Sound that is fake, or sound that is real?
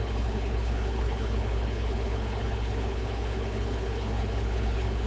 fake